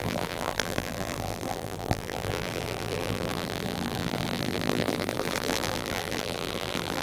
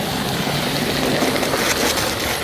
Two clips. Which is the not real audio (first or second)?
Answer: first